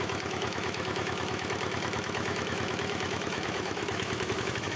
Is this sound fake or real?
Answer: fake